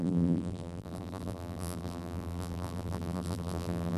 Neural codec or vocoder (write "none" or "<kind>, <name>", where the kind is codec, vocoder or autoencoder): vocoder, BigVGAN v2